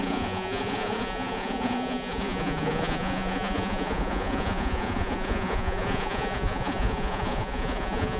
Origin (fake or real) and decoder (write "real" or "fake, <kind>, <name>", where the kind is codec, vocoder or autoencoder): fake, vocoder, Vocos